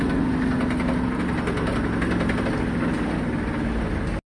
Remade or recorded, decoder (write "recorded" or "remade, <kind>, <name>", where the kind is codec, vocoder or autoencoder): recorded